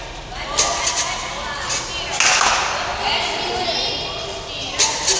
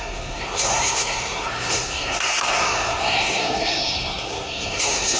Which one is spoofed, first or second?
second